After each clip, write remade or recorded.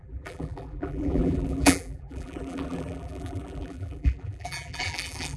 remade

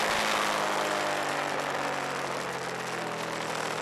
recorded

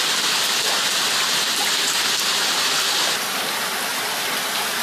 recorded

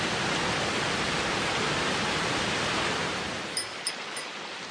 recorded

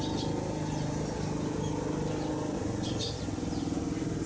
recorded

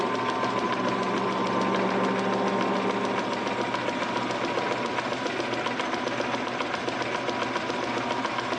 recorded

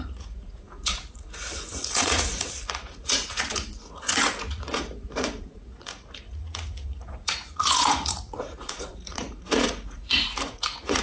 remade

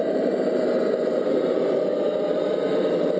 remade